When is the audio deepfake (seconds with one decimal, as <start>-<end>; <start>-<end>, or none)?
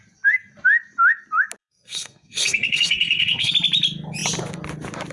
1.6-3.5